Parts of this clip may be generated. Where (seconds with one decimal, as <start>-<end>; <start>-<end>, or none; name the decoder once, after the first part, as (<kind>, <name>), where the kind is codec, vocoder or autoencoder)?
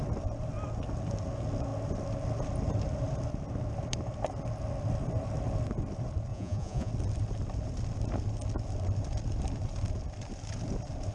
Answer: 6.3-6.9 (vocoder, Vocos)